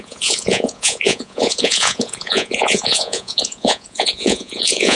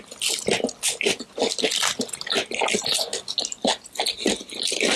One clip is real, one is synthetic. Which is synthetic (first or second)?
first